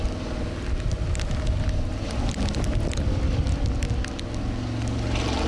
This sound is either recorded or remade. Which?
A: recorded